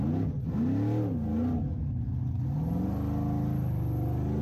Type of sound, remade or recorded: recorded